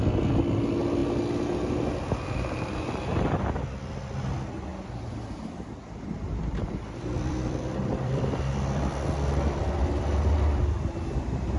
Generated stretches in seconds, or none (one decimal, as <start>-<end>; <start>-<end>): 4.7-10.0